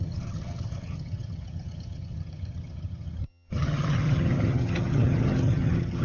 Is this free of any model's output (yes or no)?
no